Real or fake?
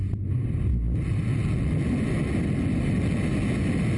real